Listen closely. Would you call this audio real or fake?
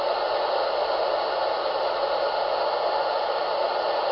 real